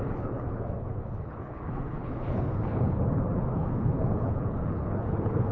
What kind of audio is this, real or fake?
fake